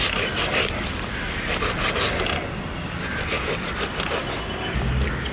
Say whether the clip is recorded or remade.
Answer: recorded